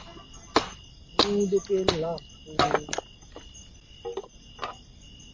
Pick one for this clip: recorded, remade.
recorded